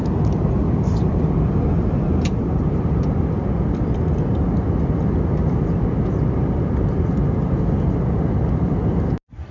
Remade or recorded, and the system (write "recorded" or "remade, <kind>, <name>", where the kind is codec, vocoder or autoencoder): recorded